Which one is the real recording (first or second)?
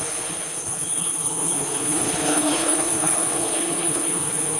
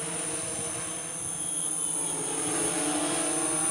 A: second